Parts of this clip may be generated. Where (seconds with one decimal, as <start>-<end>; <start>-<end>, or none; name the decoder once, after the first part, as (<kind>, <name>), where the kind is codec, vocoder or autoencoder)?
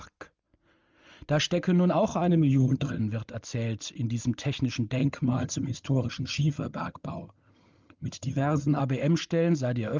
2.1-3.0 (vocoder, HiFi-GAN); 5.0-8.8